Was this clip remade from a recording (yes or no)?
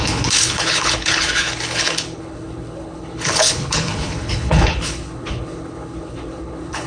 yes